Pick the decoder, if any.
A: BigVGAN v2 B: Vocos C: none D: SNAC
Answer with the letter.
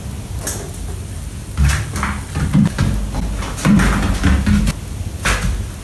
C